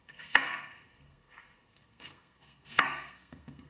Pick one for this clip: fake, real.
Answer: fake